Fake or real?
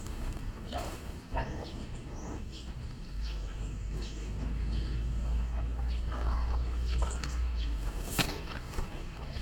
fake